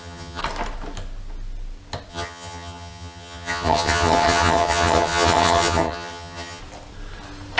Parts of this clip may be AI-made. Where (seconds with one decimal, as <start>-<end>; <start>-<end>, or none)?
0.0-0.4; 2.1-6.6